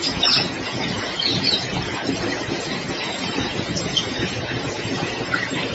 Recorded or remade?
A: remade